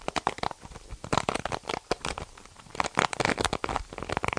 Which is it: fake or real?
real